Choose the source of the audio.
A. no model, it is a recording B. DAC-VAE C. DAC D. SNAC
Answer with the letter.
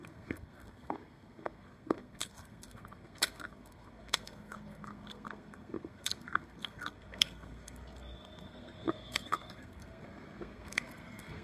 D